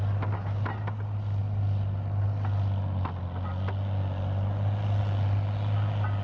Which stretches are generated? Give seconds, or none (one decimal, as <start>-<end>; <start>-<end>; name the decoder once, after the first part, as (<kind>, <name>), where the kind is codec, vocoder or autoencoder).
none